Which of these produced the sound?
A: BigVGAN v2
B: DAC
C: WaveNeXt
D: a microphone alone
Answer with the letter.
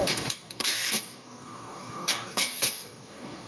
B